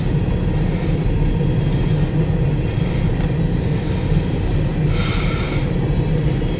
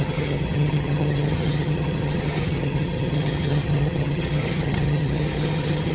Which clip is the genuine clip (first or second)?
first